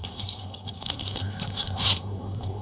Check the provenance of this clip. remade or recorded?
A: remade